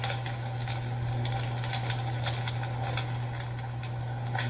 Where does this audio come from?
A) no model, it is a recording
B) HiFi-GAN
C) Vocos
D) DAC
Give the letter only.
A